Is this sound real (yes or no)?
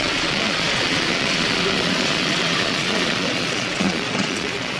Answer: no